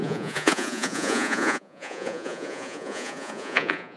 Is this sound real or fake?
fake